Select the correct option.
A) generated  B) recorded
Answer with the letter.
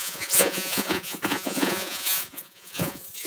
A